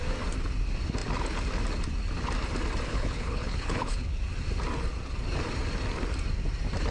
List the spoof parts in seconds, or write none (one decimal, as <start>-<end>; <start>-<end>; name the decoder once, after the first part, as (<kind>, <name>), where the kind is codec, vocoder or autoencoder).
2.9-4.2 (codec, HILCodec)